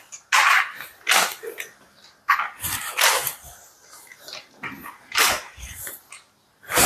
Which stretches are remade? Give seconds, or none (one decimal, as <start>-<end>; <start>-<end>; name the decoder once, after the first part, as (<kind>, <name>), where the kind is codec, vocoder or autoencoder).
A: 4.1-5.8 (vocoder, BigVGAN v2)